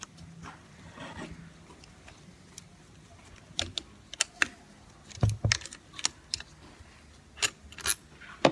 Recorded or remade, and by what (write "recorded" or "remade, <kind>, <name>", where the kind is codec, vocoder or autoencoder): recorded